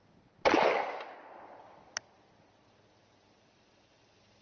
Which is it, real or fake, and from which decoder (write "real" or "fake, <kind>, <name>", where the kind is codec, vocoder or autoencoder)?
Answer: real